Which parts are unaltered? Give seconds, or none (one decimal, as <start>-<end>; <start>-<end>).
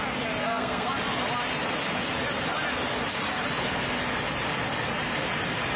0.0-0.4; 1.0-5.8